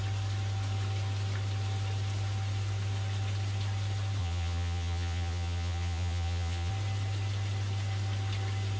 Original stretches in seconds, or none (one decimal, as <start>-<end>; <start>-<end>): 0.0-4.2; 6.7-8.8